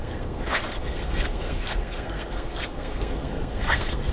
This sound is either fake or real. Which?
fake